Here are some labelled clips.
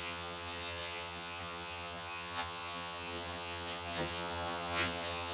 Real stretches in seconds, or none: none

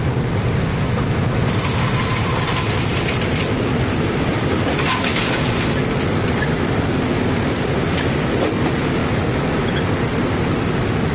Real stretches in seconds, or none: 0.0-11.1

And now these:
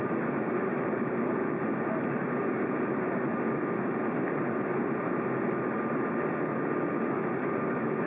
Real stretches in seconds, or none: 0.0-0.7; 2.0-8.1

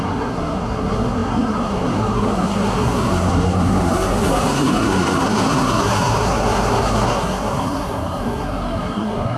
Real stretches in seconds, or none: none

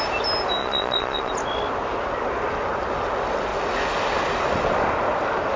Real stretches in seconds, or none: 0.0-0.6; 1.3-5.6

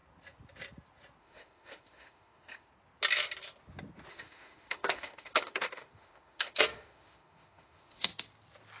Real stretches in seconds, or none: 0.0-1.2; 2.7-4.1; 8.1-8.8